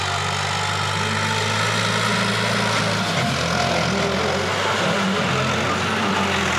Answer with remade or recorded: recorded